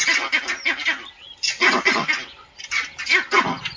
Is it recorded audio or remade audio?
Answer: recorded